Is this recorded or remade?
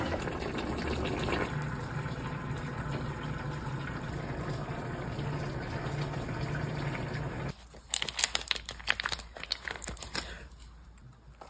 recorded